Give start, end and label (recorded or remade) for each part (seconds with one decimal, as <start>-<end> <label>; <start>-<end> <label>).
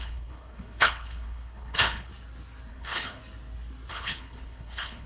0.0-2.1 remade; 2.1-2.7 recorded; 2.7-3.2 remade; 3.2-3.9 recorded; 3.9-5.1 remade